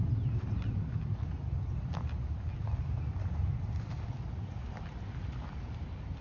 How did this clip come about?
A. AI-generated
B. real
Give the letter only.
B